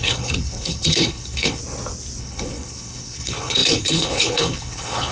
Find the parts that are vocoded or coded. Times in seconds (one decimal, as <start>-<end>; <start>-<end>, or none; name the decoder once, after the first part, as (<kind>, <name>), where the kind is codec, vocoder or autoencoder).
0.0-1.6 (codec, HILCodec); 2.2-5.1